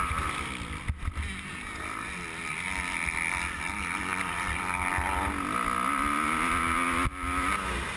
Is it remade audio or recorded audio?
recorded